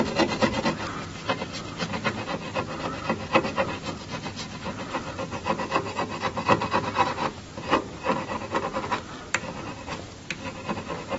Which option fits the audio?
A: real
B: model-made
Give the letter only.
A